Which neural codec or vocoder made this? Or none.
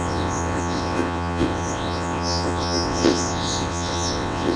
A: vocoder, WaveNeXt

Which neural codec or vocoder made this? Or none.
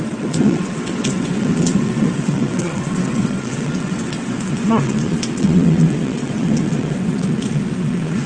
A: vocoder, WaveNeXt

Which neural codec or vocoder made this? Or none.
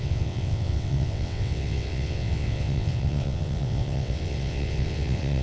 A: vocoder, WaveNeXt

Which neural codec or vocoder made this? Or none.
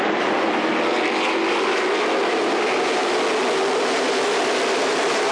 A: none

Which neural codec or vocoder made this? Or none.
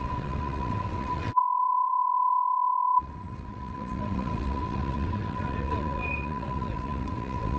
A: vocoder, WaveNeXt